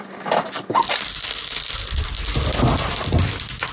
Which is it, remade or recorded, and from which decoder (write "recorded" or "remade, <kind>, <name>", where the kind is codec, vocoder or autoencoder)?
recorded